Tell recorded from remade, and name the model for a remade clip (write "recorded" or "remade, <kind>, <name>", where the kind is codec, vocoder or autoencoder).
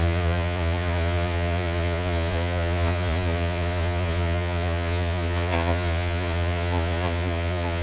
remade, vocoder, Vocos